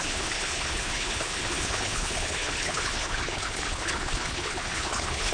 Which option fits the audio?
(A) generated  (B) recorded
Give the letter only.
A